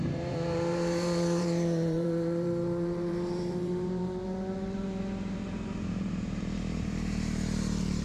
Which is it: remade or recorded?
remade